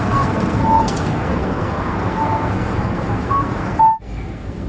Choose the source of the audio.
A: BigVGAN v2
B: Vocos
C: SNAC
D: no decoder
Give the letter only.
C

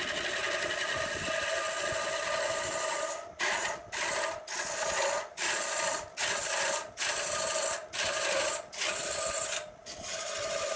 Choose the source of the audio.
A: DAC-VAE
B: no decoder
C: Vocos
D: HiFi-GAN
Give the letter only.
B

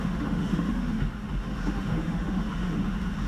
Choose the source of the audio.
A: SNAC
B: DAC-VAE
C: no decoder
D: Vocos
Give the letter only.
B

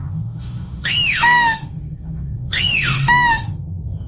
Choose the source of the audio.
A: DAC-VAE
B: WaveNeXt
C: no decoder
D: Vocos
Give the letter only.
A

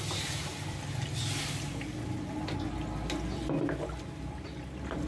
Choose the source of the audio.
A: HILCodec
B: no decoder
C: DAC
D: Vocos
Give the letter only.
B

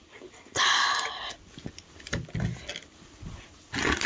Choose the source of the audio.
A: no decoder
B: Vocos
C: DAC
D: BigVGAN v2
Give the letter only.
A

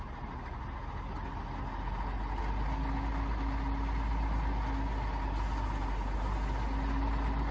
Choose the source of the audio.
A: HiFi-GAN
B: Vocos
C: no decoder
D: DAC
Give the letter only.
C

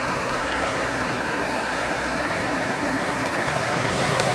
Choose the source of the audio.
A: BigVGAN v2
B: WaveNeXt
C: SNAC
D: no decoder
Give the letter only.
C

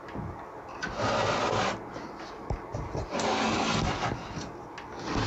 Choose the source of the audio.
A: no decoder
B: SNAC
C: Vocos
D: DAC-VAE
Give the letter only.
A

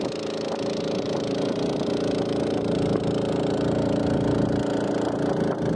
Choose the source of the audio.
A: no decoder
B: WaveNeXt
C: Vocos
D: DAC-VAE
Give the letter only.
A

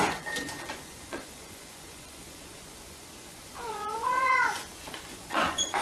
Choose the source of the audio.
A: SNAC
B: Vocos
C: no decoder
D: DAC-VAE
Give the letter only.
B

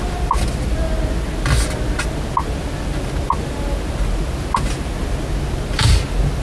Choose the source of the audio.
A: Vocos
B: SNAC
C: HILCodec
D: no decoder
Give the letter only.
D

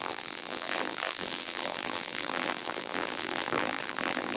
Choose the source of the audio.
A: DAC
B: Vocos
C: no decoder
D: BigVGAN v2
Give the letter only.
D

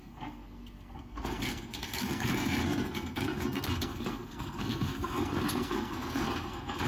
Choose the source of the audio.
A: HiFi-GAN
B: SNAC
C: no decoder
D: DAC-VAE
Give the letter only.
B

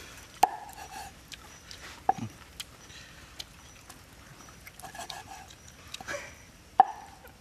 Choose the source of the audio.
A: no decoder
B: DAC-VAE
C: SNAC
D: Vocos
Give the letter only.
A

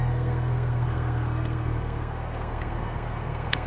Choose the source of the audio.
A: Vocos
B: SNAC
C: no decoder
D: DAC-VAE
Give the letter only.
B